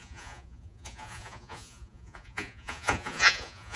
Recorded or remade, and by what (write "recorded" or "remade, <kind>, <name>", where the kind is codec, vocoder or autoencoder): remade, vocoder, Vocos